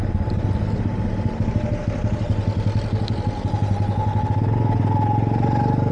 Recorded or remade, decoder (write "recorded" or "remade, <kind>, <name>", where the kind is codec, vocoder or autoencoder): recorded